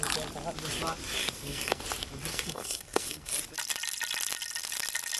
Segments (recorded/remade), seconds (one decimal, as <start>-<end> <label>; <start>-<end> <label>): 0.0-1.2 recorded; 1.2-1.8 remade; 1.8-2.3 recorded; 2.3-3.3 remade; 3.3-5.2 recorded